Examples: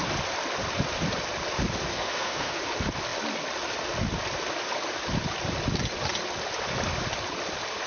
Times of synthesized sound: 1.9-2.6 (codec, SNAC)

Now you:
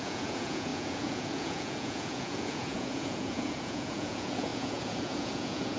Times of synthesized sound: 0.0-5.8 (vocoder, Vocos)

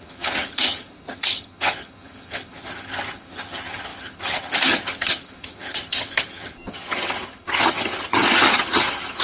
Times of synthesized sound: 0.0-9.2 (vocoder, HiFi-GAN)

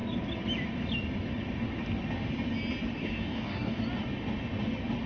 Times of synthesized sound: 3.0-3.8 (codec, DAC)

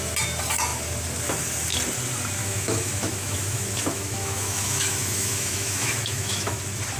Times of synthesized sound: 2.4-6.6 (autoencoder, DAC-VAE)

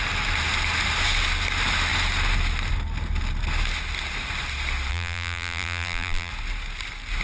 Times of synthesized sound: 4.9-6.3 (vocoder, BigVGAN v2)

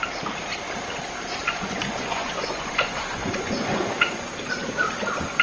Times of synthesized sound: 1.4-4.3 (vocoder, Vocos)

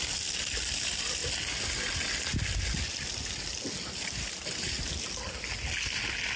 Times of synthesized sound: none